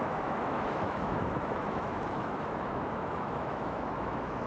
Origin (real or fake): fake